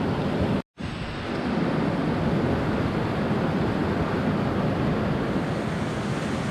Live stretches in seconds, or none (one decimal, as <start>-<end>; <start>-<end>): 0.0-6.5